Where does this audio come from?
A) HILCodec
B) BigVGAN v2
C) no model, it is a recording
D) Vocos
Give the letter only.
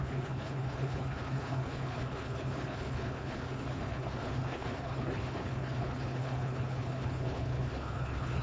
A